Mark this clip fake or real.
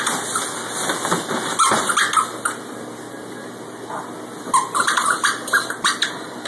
real